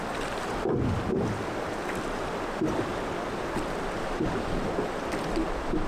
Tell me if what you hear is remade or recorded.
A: recorded